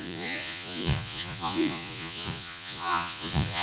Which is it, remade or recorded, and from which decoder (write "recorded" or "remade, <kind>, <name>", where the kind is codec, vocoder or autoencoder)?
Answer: remade, vocoder, Vocos